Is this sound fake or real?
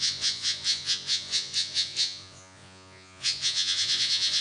fake